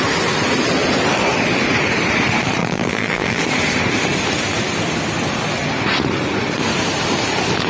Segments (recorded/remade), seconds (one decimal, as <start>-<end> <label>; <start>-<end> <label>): 0.0-2.6 recorded; 2.6-3.4 remade; 3.4-7.7 recorded